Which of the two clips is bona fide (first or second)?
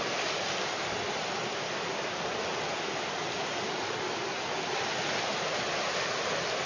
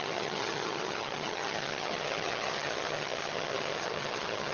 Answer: first